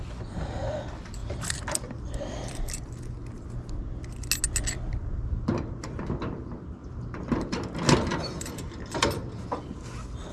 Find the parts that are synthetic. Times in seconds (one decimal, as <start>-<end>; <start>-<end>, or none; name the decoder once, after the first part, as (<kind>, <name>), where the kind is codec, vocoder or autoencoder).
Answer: 1.2-2.7 (vocoder, BigVGAN v2); 6.8-9.6